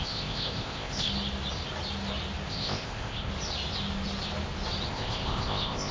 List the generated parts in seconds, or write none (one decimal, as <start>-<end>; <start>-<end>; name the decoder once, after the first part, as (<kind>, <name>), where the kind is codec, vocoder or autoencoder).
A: 0.0-1.1 (codec, ZipCodec); 2.5-3.3; 4.9-5.9